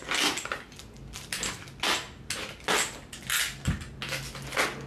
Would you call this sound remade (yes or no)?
no